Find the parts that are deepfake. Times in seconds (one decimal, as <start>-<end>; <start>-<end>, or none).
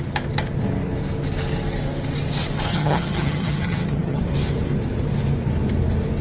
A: 2.7-4.2